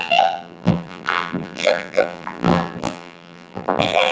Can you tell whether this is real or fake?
fake